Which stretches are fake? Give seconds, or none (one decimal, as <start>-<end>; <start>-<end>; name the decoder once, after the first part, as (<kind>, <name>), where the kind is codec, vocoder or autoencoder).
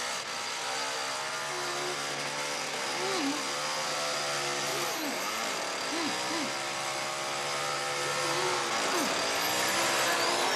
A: 4.7-5.6 (vocoder, BigVGAN v2)